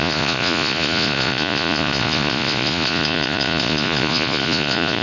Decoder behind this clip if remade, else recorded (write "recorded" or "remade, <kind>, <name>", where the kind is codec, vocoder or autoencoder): remade, vocoder, Vocos